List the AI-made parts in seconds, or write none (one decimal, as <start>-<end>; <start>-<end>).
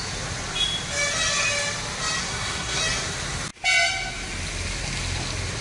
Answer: 2.2-2.8